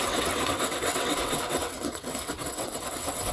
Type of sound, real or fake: fake